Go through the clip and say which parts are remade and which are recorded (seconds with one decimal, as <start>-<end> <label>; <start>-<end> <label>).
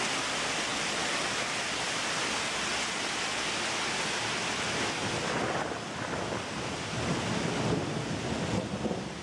0.0-9.2 recorded